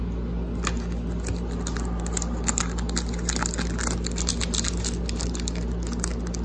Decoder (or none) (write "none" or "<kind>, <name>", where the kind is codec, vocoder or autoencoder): none